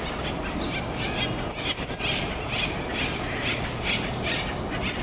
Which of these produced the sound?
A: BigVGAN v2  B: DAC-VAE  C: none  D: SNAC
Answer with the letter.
C